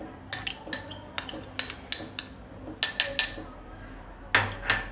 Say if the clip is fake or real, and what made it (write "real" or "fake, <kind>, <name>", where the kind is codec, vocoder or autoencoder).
real